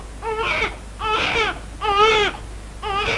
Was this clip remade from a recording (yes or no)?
no